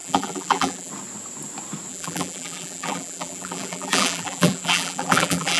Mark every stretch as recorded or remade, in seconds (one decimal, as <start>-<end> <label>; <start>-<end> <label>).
0.0-0.9 remade; 0.9-1.9 recorded; 1.9-5.6 remade